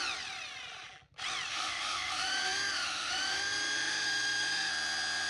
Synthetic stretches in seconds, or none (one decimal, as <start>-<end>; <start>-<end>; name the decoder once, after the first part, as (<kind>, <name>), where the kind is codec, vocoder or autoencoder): 1.5-4.7 (autoencoder, DAC-VAE)